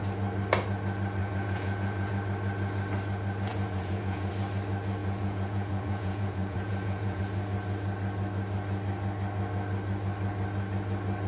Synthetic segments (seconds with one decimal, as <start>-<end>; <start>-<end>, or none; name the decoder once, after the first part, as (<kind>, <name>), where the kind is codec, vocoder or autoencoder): 1.2-2.1 (vocoder, Vocos); 3.5-4.3; 5.0-7.2